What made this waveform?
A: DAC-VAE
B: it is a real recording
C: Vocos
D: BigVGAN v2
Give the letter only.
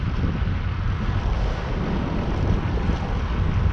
B